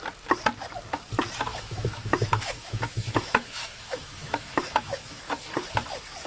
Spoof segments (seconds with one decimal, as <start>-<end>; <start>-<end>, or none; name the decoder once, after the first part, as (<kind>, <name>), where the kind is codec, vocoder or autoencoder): 1.5-5.3 (autoencoder, DAC-VAE)